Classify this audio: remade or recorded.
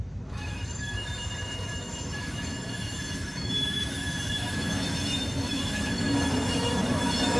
remade